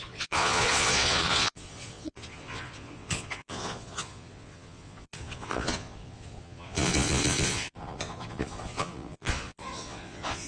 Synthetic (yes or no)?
yes